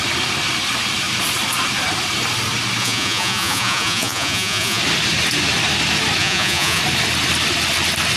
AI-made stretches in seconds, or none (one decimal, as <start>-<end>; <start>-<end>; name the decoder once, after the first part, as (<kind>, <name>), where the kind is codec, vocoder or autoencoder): 2.8-4.8 (vocoder, Vocos); 6.2-6.8